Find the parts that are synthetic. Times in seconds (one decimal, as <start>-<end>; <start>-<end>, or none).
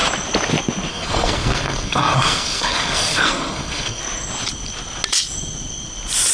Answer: 0.9-4.0